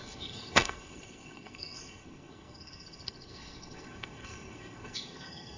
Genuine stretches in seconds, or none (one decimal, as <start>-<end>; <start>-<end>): none